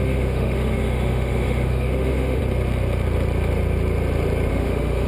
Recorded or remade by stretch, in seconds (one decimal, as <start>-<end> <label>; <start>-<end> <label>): 0.0-2.4 remade; 2.4-4.5 recorded; 4.5-5.1 remade